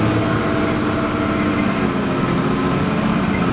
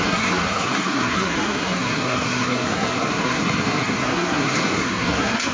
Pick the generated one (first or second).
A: second